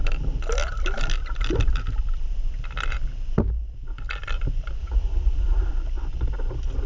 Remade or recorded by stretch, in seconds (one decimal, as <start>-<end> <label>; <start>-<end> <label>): 0.0-4.8 recorded; 4.8-5.7 remade; 5.7-6.9 recorded